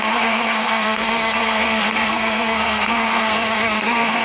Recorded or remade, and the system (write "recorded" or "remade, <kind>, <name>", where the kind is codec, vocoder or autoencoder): remade, codec, SNAC